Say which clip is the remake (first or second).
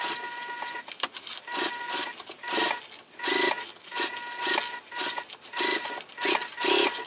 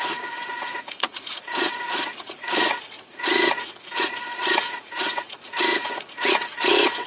second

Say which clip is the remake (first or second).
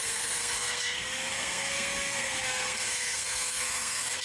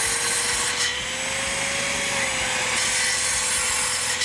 first